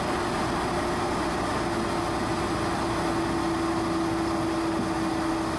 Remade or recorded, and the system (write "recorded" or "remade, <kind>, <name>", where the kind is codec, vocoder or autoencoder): recorded